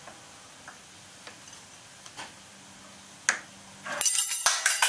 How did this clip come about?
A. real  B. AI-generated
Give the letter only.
A